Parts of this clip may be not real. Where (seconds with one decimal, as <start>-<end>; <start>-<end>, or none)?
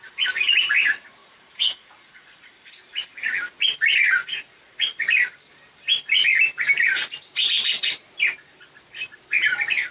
1.2-2.7; 4.2-5.0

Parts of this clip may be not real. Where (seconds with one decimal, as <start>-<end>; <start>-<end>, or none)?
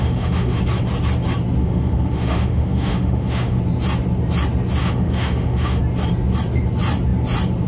0.0-0.6; 1.6-3.6; 4.8-5.8